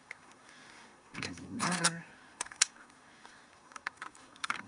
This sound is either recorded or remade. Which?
remade